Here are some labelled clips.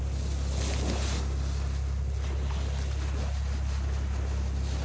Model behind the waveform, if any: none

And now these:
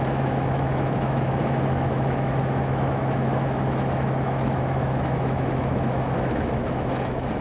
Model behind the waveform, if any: autoencoder, DAC-VAE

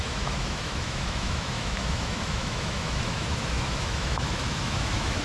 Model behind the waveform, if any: autoencoder, DAC-VAE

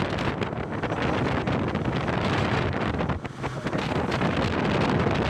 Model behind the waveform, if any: none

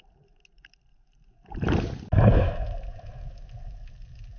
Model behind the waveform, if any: none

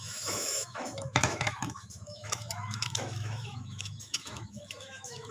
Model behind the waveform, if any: autoencoder, DAC-VAE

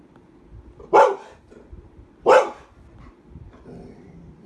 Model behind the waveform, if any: none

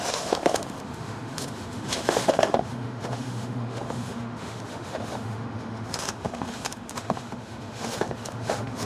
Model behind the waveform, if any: autoencoder, DAC-VAE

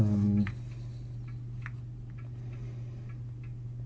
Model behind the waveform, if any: none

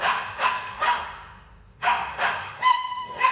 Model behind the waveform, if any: autoencoder, DAC-VAE